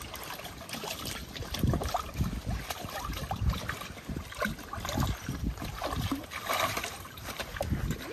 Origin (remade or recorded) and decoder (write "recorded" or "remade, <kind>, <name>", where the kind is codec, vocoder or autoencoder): recorded